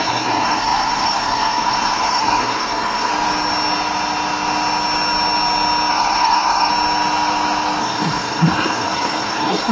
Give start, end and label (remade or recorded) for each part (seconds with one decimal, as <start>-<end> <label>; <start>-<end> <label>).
0.0-3.1 remade; 3.1-5.9 recorded; 5.9-6.7 remade; 6.7-7.8 recorded; 7.8-9.7 remade